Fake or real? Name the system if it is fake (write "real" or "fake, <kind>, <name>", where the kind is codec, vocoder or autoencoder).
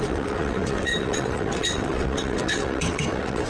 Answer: fake, vocoder, WaveNeXt